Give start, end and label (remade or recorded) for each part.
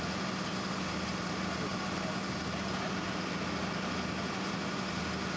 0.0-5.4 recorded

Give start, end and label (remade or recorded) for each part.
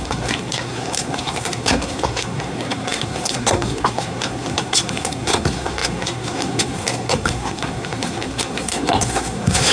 0.0-9.7 remade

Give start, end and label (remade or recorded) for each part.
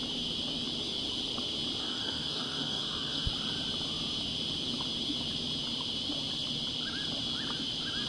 0.0-1.8 recorded; 1.8-3.3 remade; 3.3-8.1 recorded